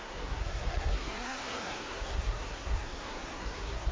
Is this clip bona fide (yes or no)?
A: no